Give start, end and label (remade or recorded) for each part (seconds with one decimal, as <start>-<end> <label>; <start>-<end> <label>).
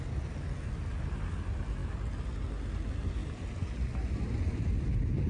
0.0-5.3 recorded